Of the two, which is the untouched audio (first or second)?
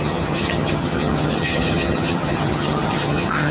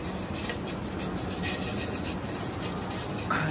second